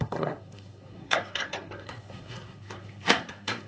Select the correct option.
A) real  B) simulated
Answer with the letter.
B